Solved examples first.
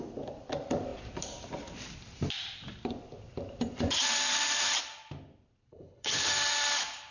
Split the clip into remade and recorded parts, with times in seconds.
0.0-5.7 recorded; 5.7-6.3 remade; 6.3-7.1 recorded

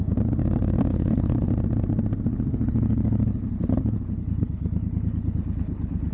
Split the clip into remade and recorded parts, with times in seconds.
0.0-0.9 recorded; 0.9-1.5 remade; 1.5-2.3 recorded; 2.3-6.1 remade

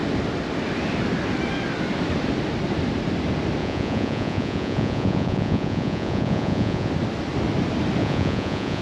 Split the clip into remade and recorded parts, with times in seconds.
0.0-3.6 recorded; 3.6-6.9 remade; 6.9-8.0 recorded; 8.0-8.8 remade